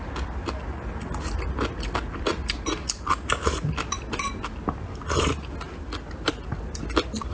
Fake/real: real